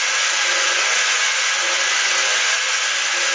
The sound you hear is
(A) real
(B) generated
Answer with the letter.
B